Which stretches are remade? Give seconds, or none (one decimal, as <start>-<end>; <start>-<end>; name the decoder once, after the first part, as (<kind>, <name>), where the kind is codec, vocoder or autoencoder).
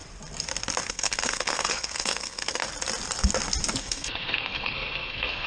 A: 0.9-2.6 (codec, SNAC); 3.8-5.5